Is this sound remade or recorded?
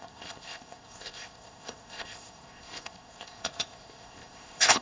remade